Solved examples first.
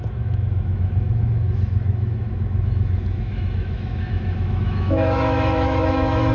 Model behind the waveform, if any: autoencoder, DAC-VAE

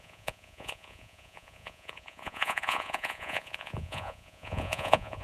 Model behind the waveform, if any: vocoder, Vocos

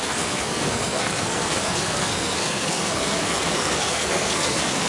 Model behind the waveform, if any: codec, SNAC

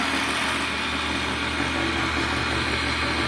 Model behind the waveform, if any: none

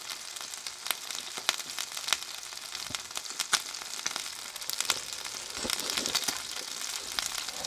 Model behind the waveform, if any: none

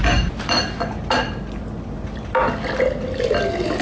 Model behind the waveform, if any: none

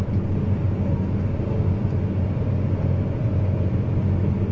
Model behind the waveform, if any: none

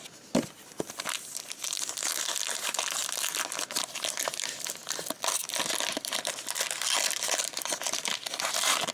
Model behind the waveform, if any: none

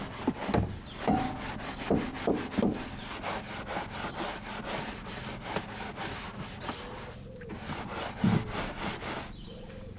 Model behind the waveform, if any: none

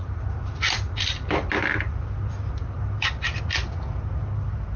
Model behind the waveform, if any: none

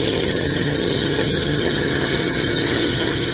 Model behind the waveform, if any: vocoder, HiFi-GAN